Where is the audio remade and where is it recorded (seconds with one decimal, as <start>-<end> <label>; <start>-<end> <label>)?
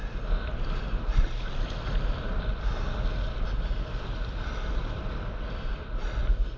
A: 0.0-6.6 recorded